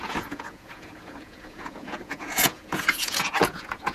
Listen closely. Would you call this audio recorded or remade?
remade